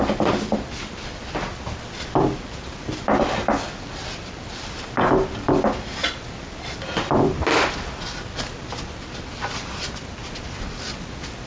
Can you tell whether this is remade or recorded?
recorded